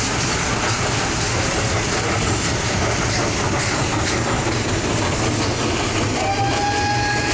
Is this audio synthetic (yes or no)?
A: no